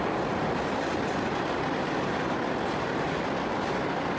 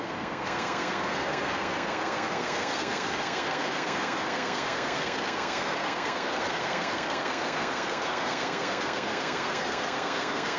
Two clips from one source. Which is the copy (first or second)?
second